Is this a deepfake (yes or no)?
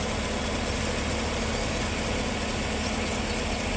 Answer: no